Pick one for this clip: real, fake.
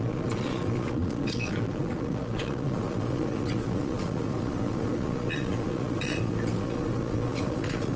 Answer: fake